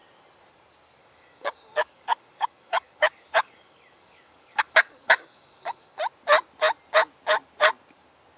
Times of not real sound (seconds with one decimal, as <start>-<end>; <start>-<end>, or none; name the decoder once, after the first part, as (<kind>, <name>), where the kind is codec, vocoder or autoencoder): 1.0-6.0 (codec, DAC)